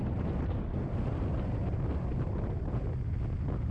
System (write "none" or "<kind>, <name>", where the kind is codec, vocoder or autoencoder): none